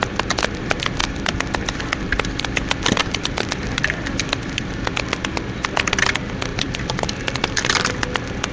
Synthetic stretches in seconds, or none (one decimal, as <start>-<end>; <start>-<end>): 1.0-1.8; 3.0-4.9; 6.5-7.3